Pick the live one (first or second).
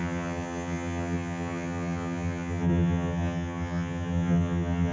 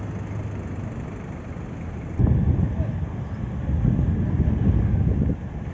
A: second